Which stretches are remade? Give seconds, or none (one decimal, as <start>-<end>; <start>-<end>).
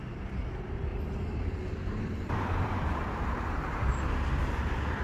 0.9-3.9